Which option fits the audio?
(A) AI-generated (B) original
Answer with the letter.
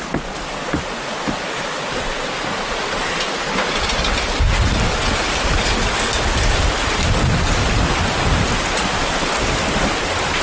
B